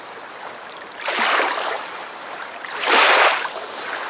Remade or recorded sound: remade